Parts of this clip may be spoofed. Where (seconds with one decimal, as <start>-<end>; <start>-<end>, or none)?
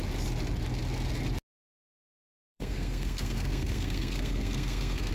1.7-5.1